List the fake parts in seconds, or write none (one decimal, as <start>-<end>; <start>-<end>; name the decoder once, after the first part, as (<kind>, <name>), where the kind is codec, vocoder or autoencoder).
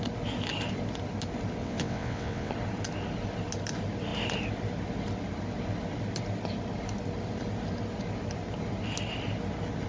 1.6-2.5 (vocoder, WaveNeXt)